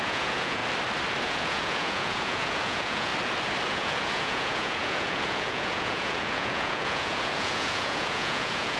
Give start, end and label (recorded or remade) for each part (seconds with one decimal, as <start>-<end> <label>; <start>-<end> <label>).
0.0-0.6 remade; 0.6-1.2 recorded; 1.2-3.1 remade; 3.1-3.7 recorded; 3.7-8.8 remade